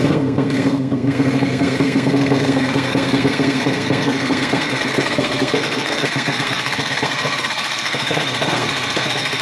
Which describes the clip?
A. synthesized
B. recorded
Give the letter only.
A